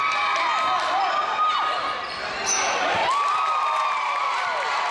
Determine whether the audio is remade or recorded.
recorded